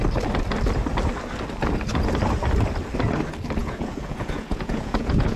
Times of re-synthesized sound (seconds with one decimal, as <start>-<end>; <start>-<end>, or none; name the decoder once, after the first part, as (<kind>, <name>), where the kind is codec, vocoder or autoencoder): 3.6-5.4 (vocoder, Vocos)